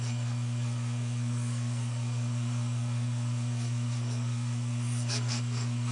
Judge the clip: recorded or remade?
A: remade